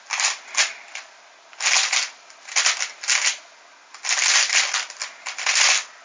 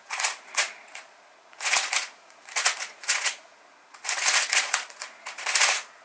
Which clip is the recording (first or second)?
first